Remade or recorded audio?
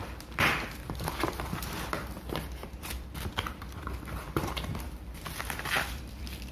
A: remade